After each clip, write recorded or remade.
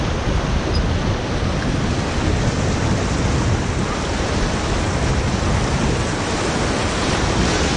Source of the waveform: recorded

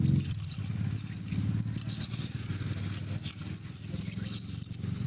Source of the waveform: recorded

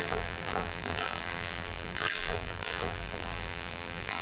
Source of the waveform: remade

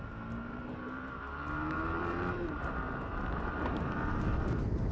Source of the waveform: remade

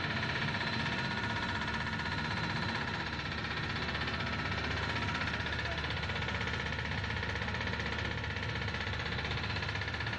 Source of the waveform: recorded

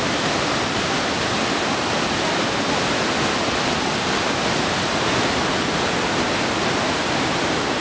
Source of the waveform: recorded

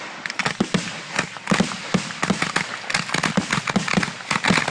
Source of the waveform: recorded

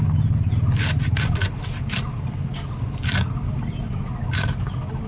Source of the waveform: recorded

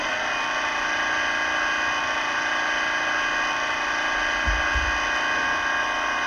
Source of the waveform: recorded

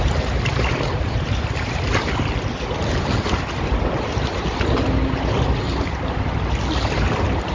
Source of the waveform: recorded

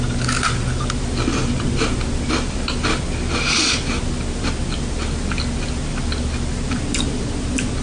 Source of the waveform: recorded